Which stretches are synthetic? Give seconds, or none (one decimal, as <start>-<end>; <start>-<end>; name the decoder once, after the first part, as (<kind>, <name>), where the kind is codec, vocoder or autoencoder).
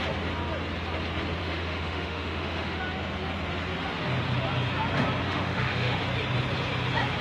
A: 1.4-2.8 (autoencoder, DAC-VAE); 5.2-6.0